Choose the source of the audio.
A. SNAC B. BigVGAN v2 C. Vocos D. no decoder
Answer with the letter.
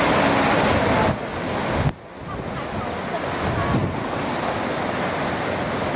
D